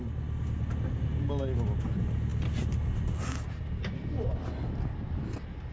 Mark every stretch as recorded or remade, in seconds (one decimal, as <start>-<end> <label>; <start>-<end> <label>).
0.0-5.7 recorded